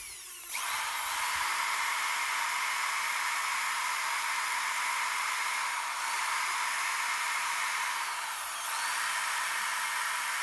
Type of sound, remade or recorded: recorded